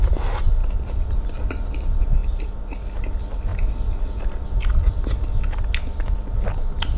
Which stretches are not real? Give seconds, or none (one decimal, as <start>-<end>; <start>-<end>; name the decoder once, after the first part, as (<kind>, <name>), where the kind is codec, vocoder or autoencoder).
none